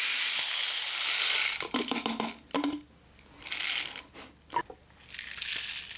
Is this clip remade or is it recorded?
recorded